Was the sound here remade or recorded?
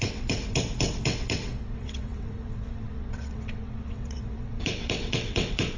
remade